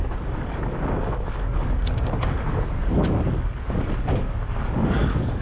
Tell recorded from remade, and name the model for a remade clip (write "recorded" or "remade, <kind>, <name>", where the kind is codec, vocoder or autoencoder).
remade, codec, DAC